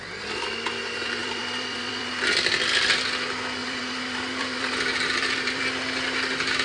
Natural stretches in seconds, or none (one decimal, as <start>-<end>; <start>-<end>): 0.0-1.2; 2.1-3.6; 5.6-6.6